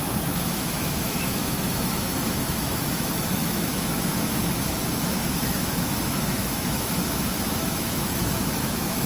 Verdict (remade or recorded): remade